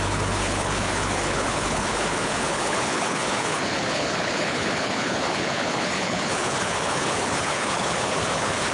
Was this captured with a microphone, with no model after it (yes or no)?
no